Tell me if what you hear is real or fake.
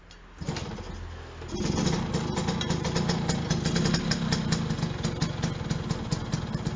real